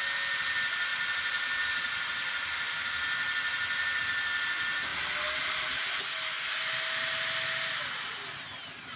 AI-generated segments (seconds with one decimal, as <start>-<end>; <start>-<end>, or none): none

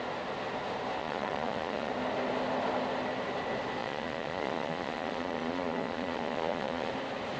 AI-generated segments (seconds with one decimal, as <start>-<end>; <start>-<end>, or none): 1.0-1.9; 3.8-6.9